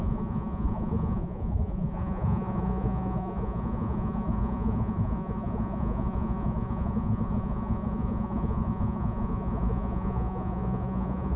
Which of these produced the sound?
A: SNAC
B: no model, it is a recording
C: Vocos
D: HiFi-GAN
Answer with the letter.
C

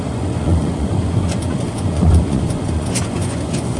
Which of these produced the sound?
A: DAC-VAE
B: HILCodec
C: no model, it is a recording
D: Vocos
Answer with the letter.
D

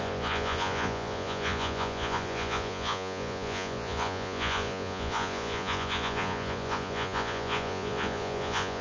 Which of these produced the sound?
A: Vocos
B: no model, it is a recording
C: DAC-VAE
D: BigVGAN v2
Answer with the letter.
A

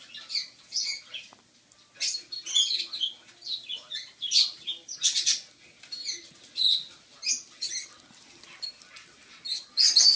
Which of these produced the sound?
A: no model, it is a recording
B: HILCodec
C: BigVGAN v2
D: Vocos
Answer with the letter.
A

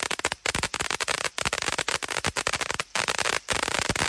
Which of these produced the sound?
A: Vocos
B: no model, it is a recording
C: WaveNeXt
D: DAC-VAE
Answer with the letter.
B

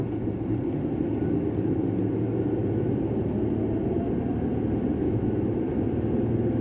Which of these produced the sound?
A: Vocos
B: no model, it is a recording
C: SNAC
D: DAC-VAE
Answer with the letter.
B